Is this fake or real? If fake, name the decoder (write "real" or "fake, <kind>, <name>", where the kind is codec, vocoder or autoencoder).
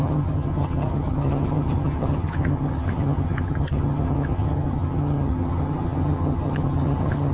fake, vocoder, HiFi-GAN